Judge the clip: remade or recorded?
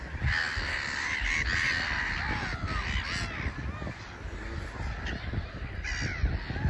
recorded